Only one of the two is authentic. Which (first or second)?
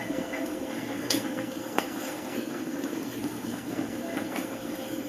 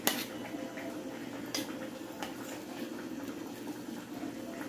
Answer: second